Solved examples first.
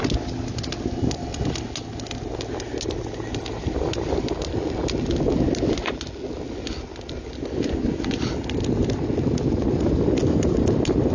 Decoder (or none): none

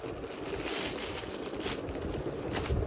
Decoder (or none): none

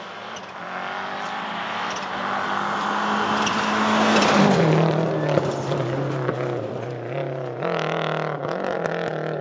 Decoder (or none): none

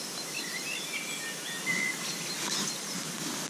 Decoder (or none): none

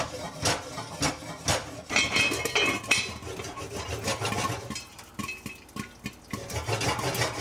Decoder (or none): none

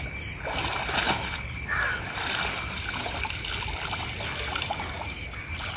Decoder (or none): none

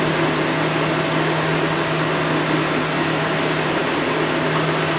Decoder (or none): none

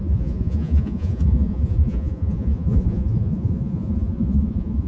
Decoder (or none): vocoder, Vocos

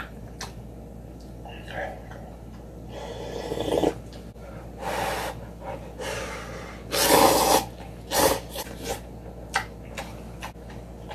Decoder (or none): none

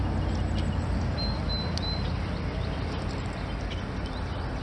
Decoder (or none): none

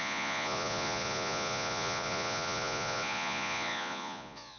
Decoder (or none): vocoder, Vocos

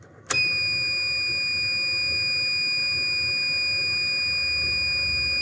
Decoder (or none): none